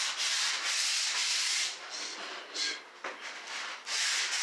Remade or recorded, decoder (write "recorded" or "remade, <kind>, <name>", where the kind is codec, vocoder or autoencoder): recorded